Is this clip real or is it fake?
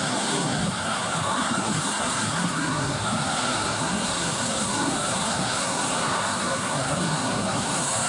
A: fake